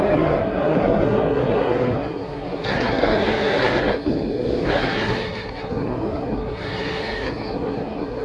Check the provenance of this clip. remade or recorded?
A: remade